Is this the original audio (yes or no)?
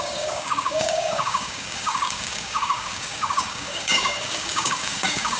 no